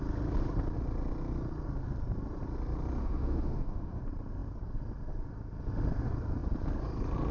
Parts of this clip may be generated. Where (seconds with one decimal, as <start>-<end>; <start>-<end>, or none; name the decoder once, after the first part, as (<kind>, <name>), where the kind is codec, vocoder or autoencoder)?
3.0-4.0 (autoencoder, DAC-VAE)